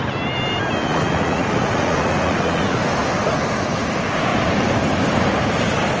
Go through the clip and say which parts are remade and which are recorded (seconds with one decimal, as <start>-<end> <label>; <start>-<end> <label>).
0.0-0.8 recorded; 0.8-2.8 remade; 2.8-6.0 recorded